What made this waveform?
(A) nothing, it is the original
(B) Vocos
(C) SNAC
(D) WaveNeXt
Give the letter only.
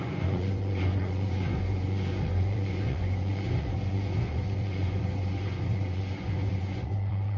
B